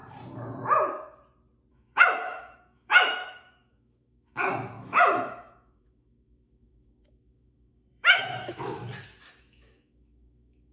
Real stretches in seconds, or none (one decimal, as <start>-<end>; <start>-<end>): 0.0-1.7; 8.8-9.4